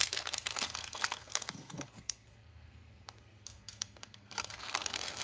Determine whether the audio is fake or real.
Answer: fake